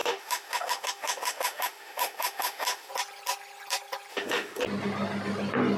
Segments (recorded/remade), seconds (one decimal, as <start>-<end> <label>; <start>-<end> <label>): 0.0-2.9 remade; 2.9-4.1 recorded; 4.1-4.6 remade; 4.6-5.8 recorded

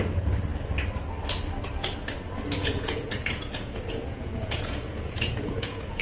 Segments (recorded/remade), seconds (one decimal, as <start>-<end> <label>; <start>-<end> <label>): 0.0-2.6 recorded; 2.6-6.0 remade

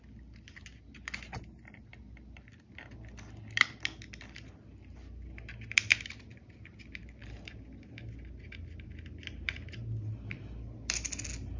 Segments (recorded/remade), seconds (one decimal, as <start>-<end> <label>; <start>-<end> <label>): 0.0-6.3 recorded; 6.3-7.7 remade; 7.7-11.6 recorded

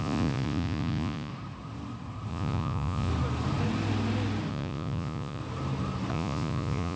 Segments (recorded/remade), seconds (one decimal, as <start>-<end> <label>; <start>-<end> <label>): 0.0-1.3 remade; 1.3-2.3 recorded; 2.3-3.1 remade; 3.1-4.5 recorded; 4.5-5.4 remade; 5.4-6.1 recorded; 6.1-7.0 remade